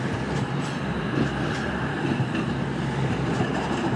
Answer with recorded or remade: remade